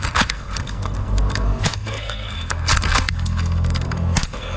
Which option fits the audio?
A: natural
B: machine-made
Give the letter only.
B